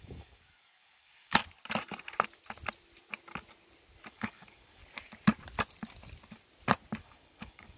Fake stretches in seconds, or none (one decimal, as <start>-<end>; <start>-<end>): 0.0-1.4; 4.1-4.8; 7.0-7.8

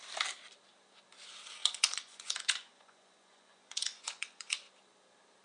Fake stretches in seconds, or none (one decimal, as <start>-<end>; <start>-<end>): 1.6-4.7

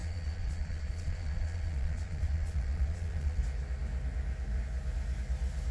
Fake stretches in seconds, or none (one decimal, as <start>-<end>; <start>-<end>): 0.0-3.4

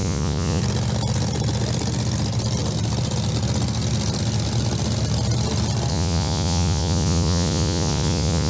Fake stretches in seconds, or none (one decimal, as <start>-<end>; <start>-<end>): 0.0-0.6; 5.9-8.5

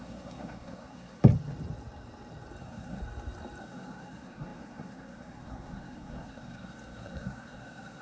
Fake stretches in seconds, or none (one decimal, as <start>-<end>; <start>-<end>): 0.0-1.2; 2.6-3.0; 3.6-8.0

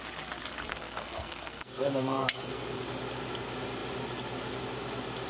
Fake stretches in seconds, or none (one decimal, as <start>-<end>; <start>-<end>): 0.7-2.8

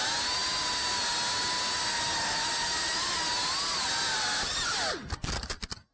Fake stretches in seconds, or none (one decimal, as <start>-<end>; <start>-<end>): none

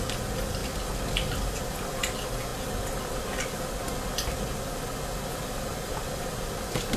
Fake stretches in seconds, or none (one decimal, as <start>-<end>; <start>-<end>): none